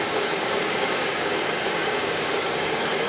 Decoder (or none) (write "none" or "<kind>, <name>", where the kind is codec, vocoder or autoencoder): codec, DAC